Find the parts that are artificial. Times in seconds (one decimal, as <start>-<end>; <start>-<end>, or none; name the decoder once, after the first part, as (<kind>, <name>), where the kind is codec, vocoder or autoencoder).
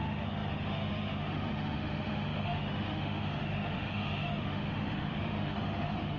0.0-6.2 (autoencoder, DAC-VAE)